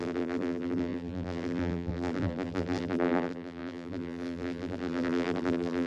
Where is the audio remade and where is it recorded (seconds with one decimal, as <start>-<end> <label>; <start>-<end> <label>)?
0.0-5.9 remade

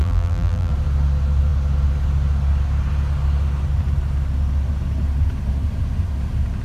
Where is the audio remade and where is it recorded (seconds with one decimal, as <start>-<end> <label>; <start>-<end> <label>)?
0.0-0.7 remade; 0.7-6.6 recorded

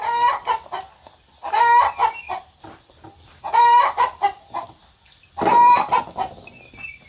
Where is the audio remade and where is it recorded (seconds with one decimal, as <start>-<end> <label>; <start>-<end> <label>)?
0.0-0.7 remade; 0.7-2.0 recorded; 2.0-5.9 remade; 5.9-7.1 recorded

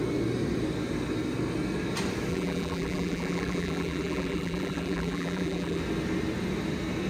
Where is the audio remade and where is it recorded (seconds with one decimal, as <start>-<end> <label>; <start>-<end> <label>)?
0.0-2.3 recorded; 2.3-5.8 remade; 5.8-7.1 recorded